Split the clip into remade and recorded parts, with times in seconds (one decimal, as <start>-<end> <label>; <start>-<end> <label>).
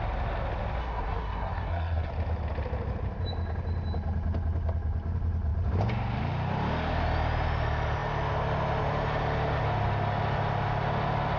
0.0-0.8 recorded; 0.8-2.1 remade; 2.1-11.4 recorded